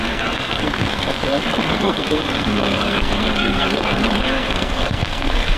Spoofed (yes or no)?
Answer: yes